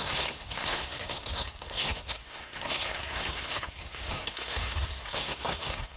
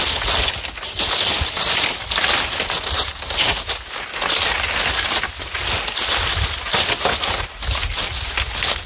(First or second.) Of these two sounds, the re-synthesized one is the first